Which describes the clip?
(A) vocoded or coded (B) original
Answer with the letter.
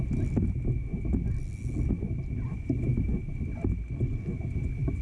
B